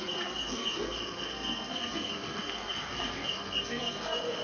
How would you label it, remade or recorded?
remade